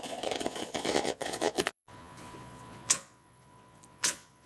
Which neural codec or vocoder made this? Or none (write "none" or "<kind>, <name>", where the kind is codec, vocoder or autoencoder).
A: vocoder, Vocos